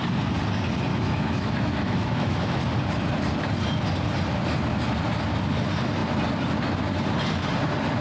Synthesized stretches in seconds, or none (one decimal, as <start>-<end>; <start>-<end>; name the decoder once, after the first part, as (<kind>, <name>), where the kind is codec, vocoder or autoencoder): 0.9-2.6 (autoencoder, DAC-VAE)